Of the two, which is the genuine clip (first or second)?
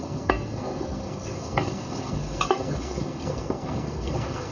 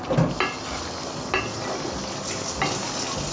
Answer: second